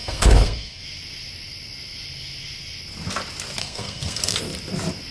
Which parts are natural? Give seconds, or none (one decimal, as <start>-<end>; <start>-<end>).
0.8-3.6; 4.4-5.1